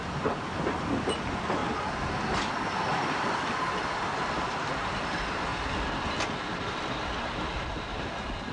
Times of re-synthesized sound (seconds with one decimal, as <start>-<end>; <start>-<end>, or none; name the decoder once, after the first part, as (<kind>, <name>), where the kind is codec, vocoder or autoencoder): none